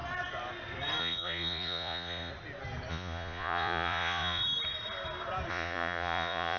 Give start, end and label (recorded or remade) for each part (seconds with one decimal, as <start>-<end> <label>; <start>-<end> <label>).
0.0-1.0 recorded; 1.0-2.3 remade; 2.3-2.9 recorded; 2.9-4.4 remade; 4.4-5.5 recorded; 5.5-6.6 remade